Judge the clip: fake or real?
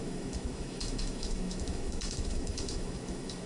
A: fake